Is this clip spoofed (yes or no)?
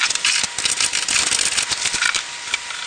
no